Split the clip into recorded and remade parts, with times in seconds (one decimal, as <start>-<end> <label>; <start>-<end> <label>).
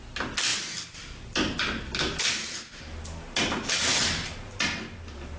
0.0-5.4 recorded